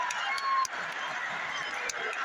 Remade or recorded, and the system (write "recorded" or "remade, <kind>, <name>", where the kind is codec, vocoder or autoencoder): recorded